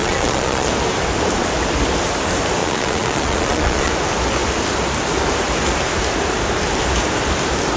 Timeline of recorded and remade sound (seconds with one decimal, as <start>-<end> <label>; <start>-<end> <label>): 0.0-0.7 remade; 0.7-2.6 recorded; 2.6-3.9 remade; 3.9-7.8 recorded

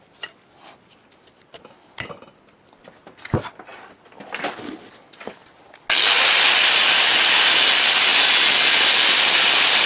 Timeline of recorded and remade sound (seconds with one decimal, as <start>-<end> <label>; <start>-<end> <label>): 0.0-9.9 recorded

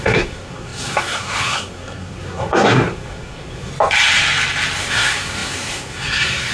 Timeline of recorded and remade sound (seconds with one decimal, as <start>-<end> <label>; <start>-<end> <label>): 0.0-3.7 remade; 3.7-4.8 recorded; 4.8-6.5 remade

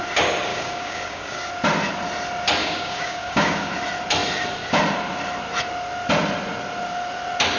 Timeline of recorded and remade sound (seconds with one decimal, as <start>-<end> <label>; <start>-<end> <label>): 0.0-0.5 recorded; 0.5-1.5 remade; 1.5-2.6 recorded; 2.6-3.7 remade; 3.7-7.6 recorded

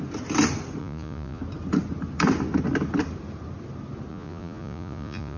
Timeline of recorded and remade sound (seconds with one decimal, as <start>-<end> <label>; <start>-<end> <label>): 0.0-0.8 recorded; 0.8-1.4 remade; 1.4-4.1 recorded; 4.1-5.4 remade